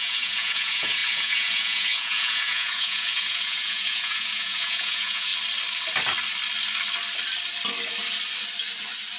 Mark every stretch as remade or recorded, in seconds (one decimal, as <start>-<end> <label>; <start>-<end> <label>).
0.0-5.3 remade; 5.3-9.2 recorded